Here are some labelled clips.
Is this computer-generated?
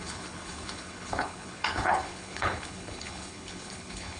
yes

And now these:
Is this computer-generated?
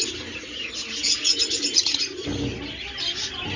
no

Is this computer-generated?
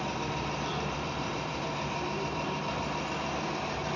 yes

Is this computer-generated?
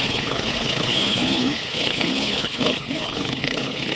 yes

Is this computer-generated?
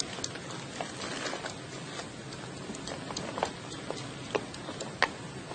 no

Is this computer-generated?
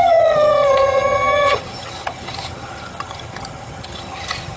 yes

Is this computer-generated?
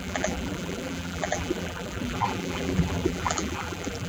yes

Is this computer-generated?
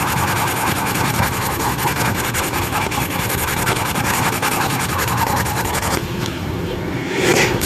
yes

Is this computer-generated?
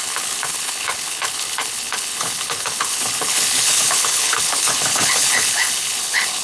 yes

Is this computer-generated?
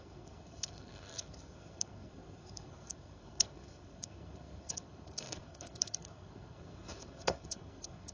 yes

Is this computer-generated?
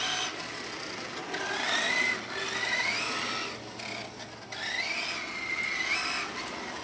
no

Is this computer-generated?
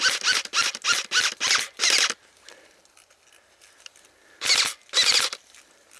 no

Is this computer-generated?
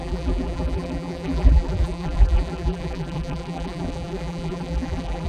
yes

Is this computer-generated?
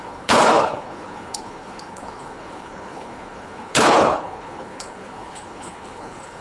yes